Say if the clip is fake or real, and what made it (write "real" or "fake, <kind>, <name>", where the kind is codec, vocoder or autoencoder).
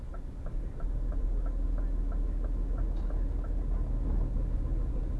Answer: real